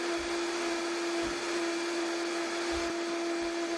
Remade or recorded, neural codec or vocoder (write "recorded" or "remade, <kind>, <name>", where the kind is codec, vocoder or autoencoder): recorded